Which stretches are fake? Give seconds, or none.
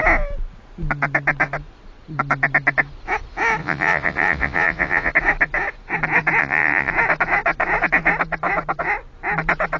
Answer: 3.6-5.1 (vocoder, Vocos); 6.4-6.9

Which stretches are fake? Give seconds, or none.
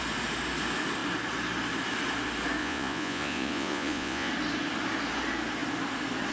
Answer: 2.6-4.3 (vocoder, Vocos)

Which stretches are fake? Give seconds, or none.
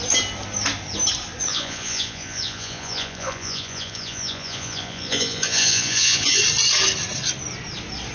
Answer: 1.5-6.4 (vocoder, Vocos)